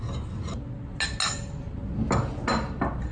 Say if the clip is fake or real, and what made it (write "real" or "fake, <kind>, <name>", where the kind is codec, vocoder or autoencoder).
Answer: real